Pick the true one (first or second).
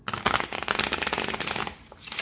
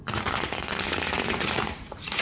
first